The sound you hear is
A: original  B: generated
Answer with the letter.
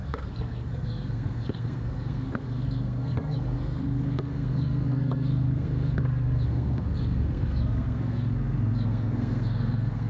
B